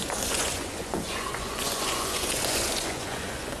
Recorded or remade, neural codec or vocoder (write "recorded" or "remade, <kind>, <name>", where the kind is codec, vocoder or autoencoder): remade, vocoder, Vocos